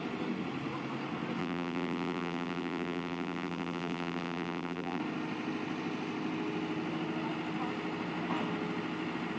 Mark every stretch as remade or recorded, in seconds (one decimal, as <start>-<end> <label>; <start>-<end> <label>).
0.0-1.4 recorded; 1.4-5.0 remade; 5.0-9.4 recorded